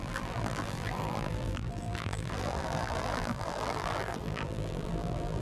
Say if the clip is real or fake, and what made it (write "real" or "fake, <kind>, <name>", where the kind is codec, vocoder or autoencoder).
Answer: fake, vocoder, BigVGAN v2